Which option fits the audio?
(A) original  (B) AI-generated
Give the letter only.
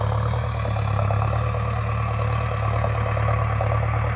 A